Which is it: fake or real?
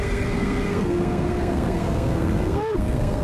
fake